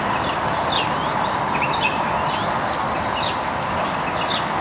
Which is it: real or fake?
real